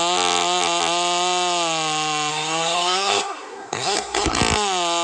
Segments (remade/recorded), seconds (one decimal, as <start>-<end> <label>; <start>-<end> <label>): 0.0-2.3 recorded; 2.3-4.4 remade; 4.4-5.0 recorded